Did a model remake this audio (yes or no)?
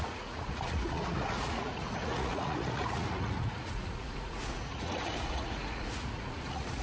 yes